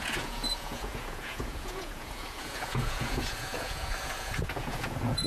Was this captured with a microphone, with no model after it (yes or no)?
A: no